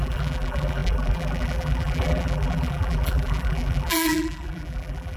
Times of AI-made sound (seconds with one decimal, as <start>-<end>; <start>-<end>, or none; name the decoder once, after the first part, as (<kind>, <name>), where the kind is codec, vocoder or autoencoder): 0.0-5.2 (vocoder, BigVGAN v2)